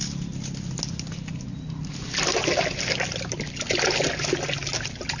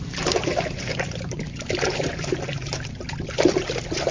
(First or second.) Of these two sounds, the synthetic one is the second